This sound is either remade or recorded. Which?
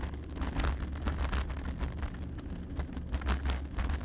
recorded